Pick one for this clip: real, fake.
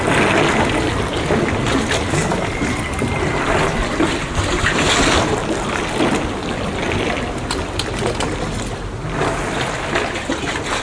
real